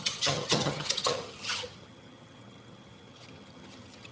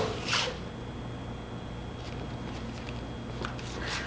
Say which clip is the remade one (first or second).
first